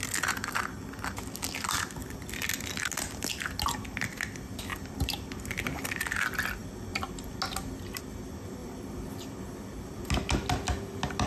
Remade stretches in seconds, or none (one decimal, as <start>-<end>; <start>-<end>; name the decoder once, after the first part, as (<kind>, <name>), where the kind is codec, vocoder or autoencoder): 2.0-2.6 (vocoder, BigVGAN v2); 4.7-5.3; 6.6-7.3; 8.6-9.9